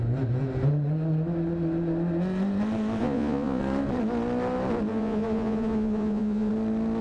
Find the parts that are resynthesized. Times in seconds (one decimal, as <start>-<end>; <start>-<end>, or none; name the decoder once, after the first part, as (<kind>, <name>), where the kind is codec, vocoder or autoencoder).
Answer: 3.0-3.6 (vocoder, Vocos); 4.9-6.5